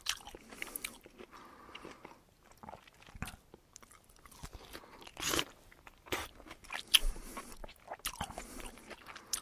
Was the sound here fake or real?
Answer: real